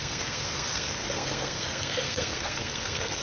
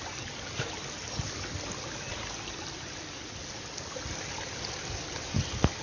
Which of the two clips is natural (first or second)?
second